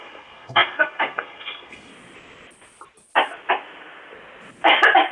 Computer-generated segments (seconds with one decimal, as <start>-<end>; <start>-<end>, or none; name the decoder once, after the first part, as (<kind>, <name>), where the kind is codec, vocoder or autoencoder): 0.0-1.9 (codec, SNAC)